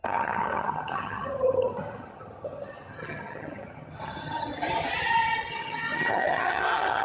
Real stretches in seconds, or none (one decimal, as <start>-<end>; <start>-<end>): 4.5-5.5